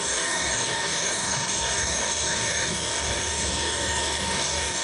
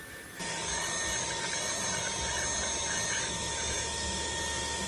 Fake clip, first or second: first